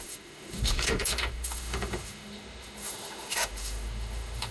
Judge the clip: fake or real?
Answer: fake